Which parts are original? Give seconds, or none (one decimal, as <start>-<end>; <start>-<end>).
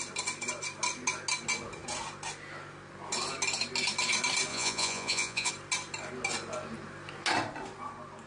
0.0-4.5; 5.5-8.3